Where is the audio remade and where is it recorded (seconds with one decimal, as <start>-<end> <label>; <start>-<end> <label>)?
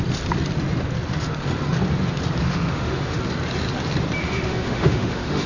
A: 0.0-2.4 recorded; 2.4-3.2 remade; 3.2-4.2 recorded; 4.2-5.5 remade